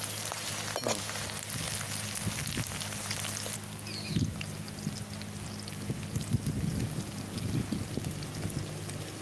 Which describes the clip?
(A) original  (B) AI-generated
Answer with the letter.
A